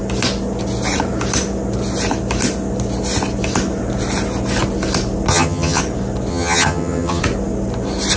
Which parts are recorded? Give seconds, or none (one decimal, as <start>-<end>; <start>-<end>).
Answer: 0.0-5.3; 5.8-6.3; 7.2-8.2